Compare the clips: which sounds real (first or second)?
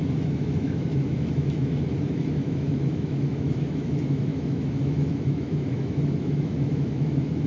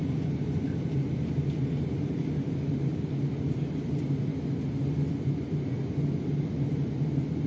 second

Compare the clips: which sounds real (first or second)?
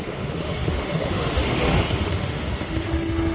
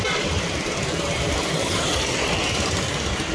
second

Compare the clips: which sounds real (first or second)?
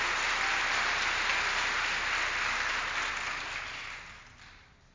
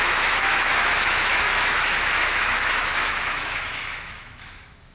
first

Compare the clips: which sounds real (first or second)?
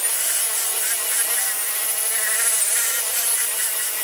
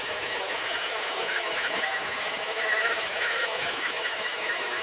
first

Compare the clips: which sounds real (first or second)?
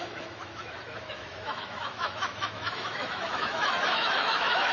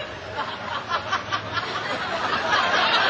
second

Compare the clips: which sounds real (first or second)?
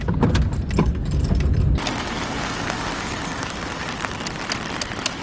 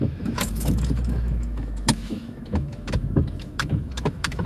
first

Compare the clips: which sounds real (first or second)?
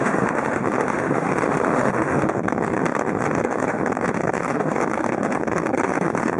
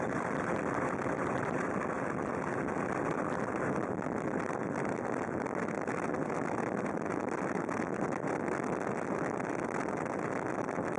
second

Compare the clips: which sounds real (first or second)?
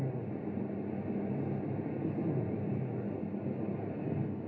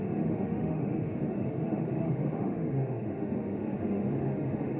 first